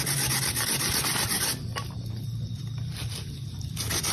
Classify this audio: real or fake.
real